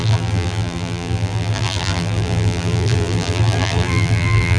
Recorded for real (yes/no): no